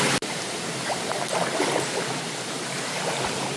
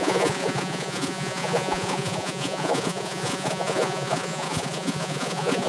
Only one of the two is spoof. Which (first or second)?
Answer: second